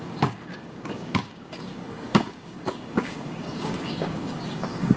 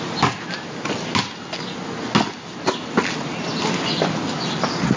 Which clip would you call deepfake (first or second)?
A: first